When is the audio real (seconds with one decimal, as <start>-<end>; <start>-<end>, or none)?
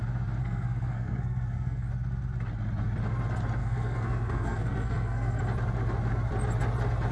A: 0.0-0.4; 1.9-3.6; 5.4-7.1